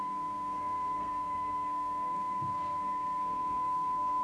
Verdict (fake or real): fake